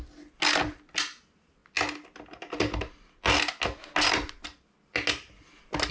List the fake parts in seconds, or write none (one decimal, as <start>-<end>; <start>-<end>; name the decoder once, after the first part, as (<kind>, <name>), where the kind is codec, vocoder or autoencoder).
none